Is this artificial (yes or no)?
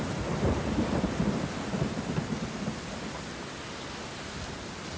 no